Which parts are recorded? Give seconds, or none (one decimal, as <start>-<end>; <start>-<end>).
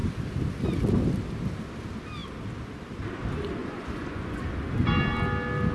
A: 0.0-3.6; 4.4-5.7